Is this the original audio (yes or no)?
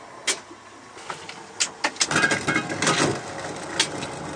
yes